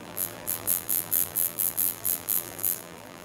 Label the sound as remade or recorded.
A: remade